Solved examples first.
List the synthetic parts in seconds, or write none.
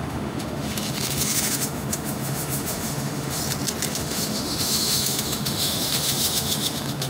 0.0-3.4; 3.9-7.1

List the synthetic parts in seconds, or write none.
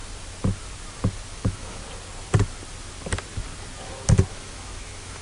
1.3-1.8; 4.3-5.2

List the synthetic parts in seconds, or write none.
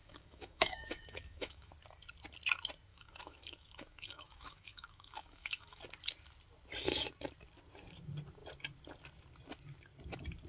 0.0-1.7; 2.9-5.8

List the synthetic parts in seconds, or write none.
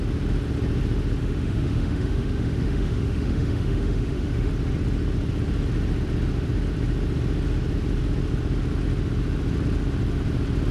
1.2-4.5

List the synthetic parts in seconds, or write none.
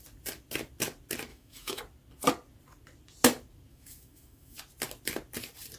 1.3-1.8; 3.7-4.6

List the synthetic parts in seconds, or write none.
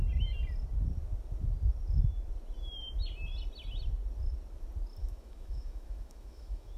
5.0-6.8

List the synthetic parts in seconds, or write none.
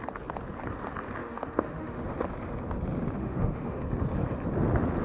1.2-2.1; 3.2-3.8